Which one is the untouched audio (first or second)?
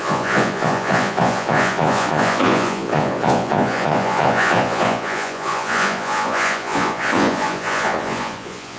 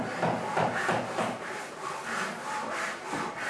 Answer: second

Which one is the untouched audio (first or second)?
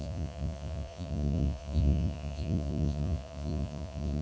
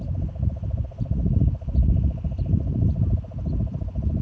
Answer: second